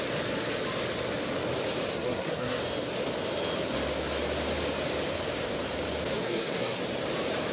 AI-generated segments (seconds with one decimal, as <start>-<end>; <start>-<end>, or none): 1.9-2.6; 6.1-6.8